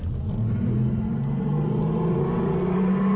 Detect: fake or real real